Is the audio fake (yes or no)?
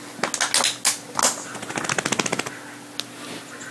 no